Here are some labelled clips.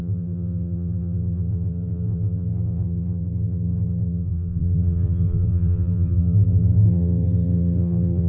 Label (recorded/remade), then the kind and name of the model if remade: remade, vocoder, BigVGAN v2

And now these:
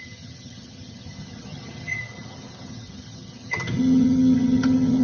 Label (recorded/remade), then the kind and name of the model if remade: remade, vocoder, HiFi-GAN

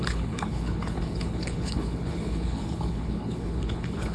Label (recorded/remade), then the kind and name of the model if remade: remade, codec, HILCodec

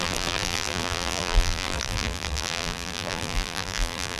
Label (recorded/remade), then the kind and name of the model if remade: remade, vocoder, BigVGAN v2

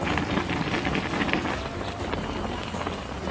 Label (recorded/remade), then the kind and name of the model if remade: recorded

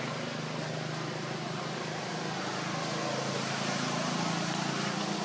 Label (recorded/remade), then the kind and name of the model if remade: recorded